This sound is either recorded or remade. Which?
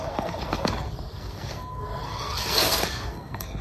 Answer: remade